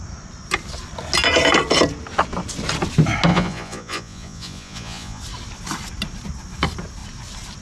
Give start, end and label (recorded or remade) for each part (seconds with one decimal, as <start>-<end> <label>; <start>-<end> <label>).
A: 0.0-3.3 recorded; 3.3-5.2 remade; 5.2-7.6 recorded